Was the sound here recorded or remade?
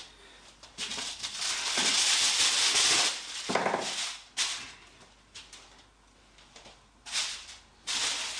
recorded